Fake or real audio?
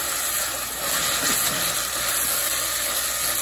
real